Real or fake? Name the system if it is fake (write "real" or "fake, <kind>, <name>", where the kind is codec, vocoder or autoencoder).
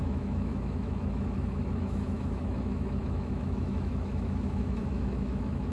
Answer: fake, autoencoder, DAC-VAE